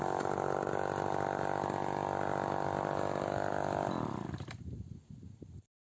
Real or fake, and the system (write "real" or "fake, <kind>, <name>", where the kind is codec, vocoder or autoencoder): fake, vocoder, BigVGAN v2